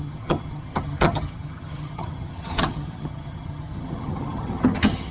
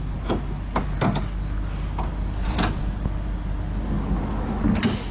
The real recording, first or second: second